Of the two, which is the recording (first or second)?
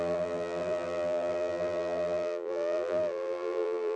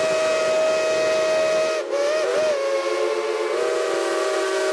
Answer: second